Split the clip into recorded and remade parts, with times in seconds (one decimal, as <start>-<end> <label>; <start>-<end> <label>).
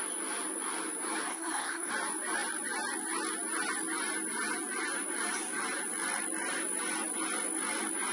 0.0-1.3 recorded; 1.3-1.9 remade; 1.9-8.1 recorded